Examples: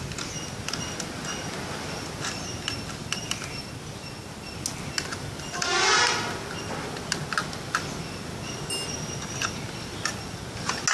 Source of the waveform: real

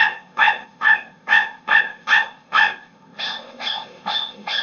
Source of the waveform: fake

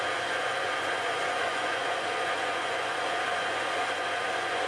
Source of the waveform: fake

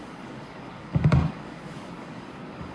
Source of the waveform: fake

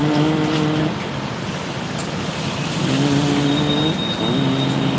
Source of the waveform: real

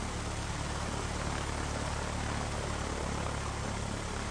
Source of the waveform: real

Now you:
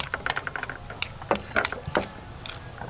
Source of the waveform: real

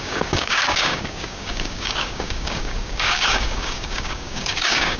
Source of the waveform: fake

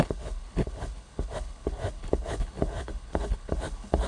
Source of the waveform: fake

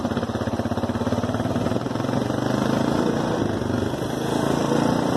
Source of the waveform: real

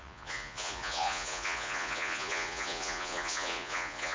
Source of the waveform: fake